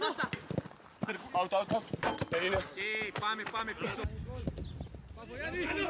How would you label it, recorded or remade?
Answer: recorded